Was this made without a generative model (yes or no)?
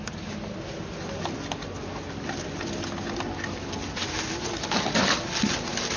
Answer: yes